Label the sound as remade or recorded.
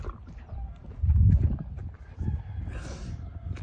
recorded